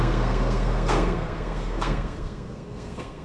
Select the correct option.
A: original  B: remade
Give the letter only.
B